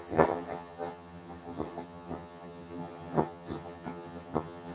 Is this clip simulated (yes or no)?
yes